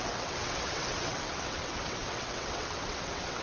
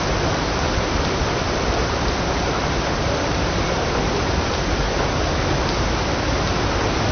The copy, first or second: first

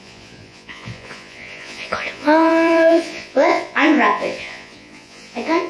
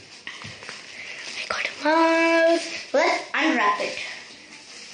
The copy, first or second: first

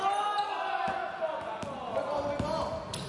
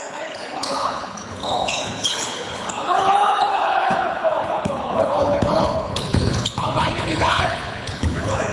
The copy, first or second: second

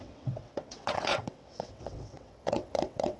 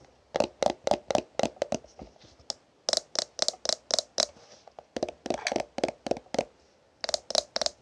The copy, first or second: first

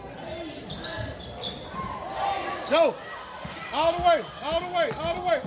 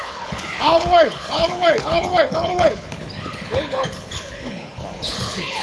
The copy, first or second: second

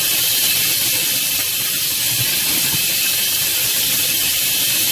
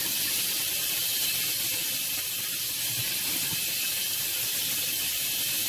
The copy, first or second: first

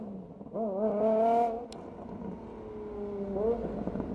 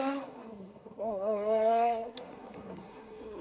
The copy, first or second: second